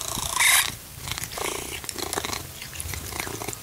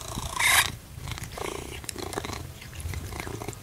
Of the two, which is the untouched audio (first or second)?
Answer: first